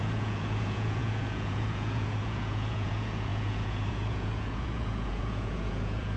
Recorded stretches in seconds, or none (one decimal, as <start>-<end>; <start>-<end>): none